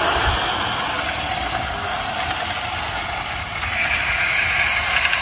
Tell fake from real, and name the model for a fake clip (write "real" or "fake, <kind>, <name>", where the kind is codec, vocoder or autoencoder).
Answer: real